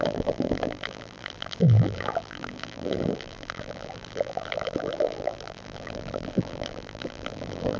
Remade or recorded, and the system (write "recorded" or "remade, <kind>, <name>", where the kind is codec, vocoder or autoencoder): remade, vocoder, BigVGAN v2